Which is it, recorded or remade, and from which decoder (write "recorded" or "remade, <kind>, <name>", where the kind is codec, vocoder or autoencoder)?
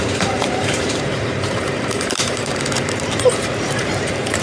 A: remade, vocoder, BigVGAN v2